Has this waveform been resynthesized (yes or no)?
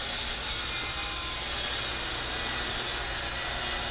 no